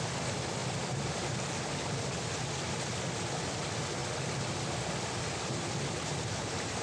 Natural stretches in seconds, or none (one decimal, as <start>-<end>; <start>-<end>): 0.0-6.8

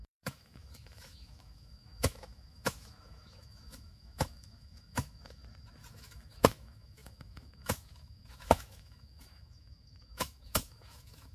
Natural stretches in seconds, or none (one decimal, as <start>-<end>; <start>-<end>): 5.4-5.9

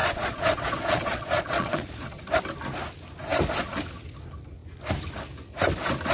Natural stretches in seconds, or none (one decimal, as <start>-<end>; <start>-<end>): 2.2-6.1

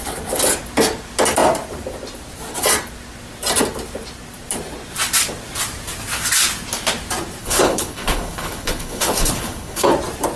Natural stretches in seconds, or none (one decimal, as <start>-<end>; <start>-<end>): 0.0-7.4; 9.9-10.4

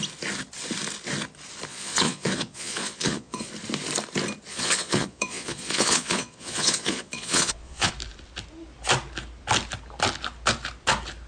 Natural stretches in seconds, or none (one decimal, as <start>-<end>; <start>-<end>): 0.0-1.7; 3.5-4.5; 7.9-11.3